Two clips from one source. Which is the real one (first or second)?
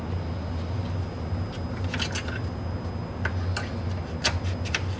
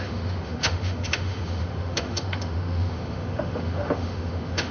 first